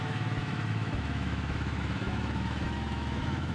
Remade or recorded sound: remade